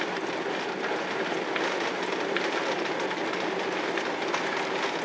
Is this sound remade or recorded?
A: recorded